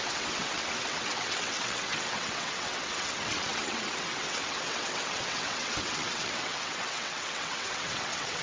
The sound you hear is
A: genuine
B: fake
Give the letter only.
B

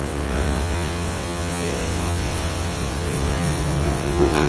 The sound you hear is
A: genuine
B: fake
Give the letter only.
B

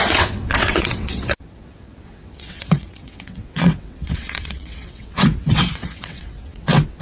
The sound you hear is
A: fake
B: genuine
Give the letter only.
A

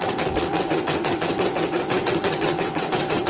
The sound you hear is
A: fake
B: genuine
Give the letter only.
A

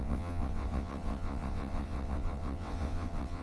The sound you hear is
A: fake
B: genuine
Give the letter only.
A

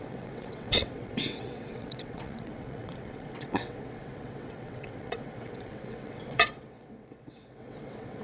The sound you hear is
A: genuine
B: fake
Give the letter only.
B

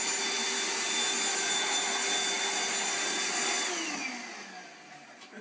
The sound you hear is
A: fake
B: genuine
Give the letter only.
B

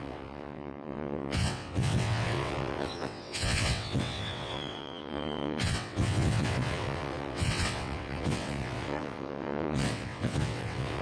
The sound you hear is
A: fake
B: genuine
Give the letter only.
A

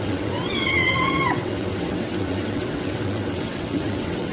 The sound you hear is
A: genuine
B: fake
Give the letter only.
B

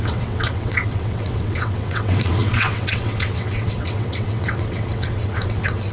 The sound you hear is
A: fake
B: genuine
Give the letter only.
A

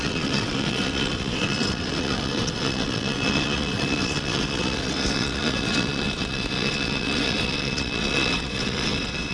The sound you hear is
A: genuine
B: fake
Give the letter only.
B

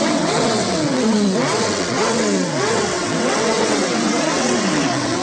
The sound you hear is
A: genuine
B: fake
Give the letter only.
B